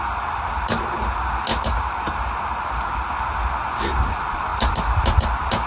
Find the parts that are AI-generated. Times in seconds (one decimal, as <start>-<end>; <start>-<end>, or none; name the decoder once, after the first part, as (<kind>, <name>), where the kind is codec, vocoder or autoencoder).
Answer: none